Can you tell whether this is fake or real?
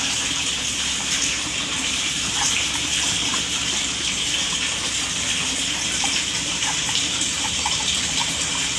fake